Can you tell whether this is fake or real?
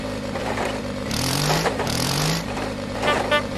fake